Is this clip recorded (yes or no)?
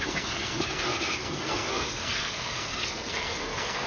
no